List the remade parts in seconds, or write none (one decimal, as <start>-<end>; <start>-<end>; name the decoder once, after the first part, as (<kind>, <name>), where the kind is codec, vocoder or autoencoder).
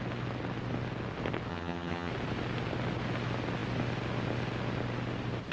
1.5-2.1 (vocoder, HiFi-GAN)